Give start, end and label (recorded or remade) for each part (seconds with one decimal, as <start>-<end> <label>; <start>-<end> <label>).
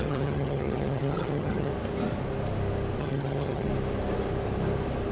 0.0-1.7 remade; 1.7-3.0 recorded; 3.0-3.7 remade; 3.7-5.1 recorded